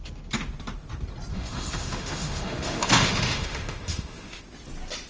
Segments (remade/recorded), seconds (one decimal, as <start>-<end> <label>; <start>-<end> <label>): 0.0-1.3 recorded; 1.3-4.4 remade; 4.4-5.1 recorded